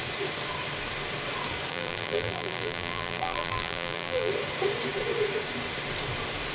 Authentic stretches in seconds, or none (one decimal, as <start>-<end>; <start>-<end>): 0.0-1.7; 4.3-6.5